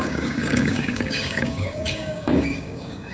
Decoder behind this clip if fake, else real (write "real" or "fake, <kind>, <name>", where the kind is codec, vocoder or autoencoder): fake, codec, DAC